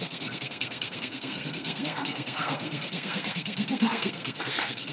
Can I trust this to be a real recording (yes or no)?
no